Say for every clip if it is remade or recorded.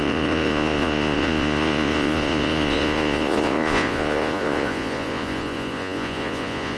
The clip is remade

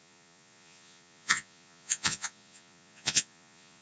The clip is remade